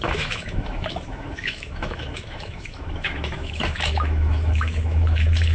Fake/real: fake